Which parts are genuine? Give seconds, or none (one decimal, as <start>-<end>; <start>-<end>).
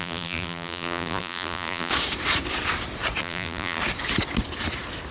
1.9-3.2; 3.8-5.1